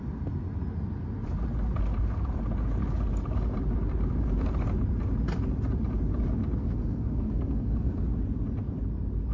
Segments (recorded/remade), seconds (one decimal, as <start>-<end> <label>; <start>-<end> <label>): 0.0-6.6 recorded; 6.6-8.0 remade; 8.0-9.3 recorded